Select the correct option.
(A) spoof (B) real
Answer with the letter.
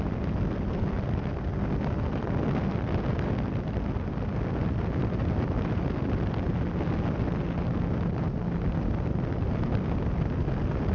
B